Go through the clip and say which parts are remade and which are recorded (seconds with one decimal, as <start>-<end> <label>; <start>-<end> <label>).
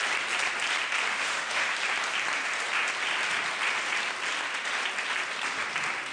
0.0-1.1 recorded; 1.1-1.7 remade; 1.7-6.1 recorded